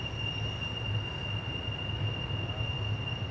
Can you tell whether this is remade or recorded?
recorded